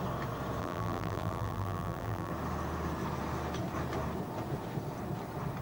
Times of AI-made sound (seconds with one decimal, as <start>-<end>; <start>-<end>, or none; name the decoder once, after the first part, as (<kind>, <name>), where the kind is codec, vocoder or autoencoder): 0.6-2.3 (vocoder, BigVGAN v2)